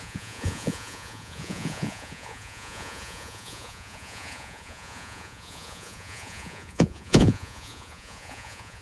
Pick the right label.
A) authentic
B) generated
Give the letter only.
B